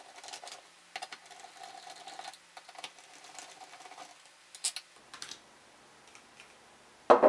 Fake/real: real